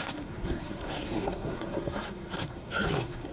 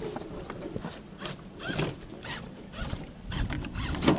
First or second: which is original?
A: second